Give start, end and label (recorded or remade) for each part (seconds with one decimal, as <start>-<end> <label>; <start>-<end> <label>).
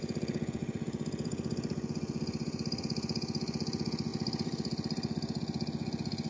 0.0-0.6 recorded; 0.6-2.8 remade; 2.8-4.1 recorded; 4.1-6.3 remade